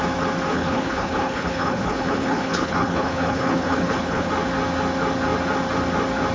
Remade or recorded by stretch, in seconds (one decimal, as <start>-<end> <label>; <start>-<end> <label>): 0.0-0.5 recorded; 0.5-4.3 remade; 4.3-6.3 recorded